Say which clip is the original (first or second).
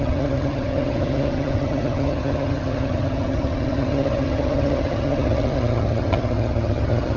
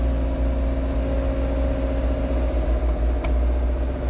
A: second